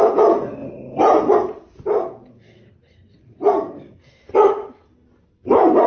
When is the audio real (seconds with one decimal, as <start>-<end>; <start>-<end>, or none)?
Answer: 0.0-0.6; 1.3-3.0; 4.0-5.9